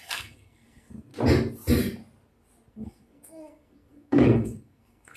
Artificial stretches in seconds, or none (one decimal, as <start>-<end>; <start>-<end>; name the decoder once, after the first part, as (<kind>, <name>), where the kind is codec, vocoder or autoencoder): 0.0-1.1 (codec, SNAC); 2.7-5.2